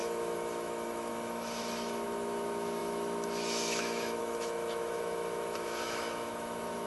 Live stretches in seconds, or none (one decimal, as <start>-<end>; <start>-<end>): none